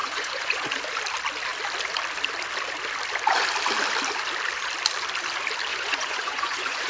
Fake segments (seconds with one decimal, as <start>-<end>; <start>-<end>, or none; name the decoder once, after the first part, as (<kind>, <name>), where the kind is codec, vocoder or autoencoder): 0.0-0.7 (vocoder, Vocos); 5.7-6.9

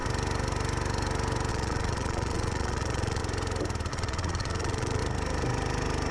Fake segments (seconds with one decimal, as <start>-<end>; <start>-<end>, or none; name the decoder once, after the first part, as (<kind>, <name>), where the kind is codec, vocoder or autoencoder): 1.5-3.2 (vocoder, Vocos); 3.9-5.0